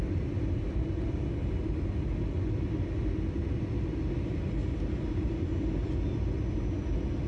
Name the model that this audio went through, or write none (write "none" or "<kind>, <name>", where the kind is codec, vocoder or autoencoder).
none